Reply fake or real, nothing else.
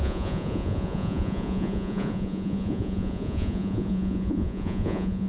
fake